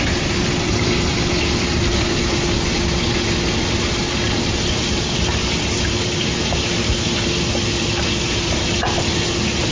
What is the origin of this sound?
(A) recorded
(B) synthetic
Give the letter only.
A